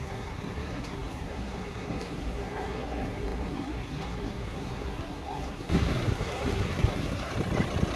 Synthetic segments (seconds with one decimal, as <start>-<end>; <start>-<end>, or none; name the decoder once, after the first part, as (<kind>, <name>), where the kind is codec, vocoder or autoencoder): 0.0-7.3 (codec, SNAC)